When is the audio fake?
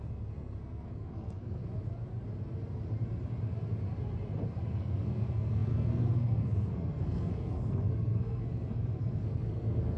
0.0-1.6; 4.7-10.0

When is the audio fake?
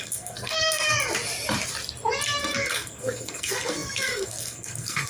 0.0-0.9; 2.4-5.1